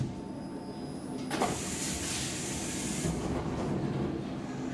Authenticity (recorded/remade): recorded